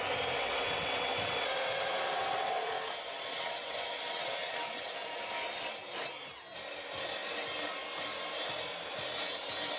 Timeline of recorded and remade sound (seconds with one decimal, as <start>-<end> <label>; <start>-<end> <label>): 0.0-0.4 recorded; 0.4-2.7 remade; 2.7-3.3 recorded; 3.3-4.9 remade; 4.9-9.8 recorded